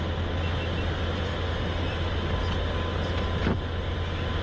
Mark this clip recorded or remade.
recorded